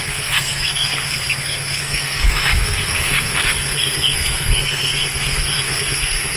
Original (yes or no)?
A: no